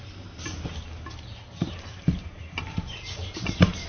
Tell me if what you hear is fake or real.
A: fake